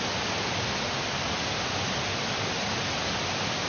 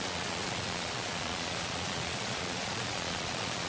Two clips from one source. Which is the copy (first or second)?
second